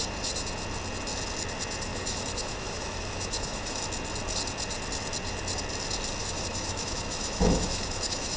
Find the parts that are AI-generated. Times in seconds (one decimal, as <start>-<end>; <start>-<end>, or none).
1.9-3.8; 6.2-8.4